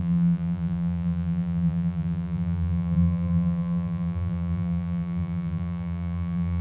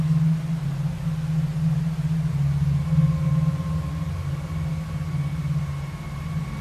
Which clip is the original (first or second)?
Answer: second